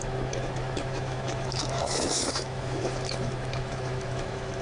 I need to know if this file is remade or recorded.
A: remade